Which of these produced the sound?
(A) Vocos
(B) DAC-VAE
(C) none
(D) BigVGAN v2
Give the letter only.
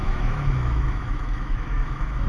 B